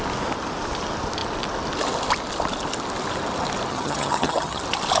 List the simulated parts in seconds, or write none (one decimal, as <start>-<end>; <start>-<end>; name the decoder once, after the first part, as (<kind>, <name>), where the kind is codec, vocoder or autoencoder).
3.7-4.6 (vocoder, HiFi-GAN)